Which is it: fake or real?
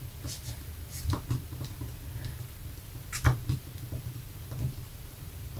fake